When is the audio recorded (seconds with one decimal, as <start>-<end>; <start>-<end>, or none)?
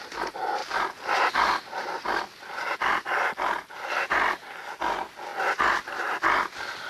0.0-6.9